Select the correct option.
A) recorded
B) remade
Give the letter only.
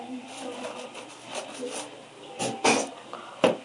A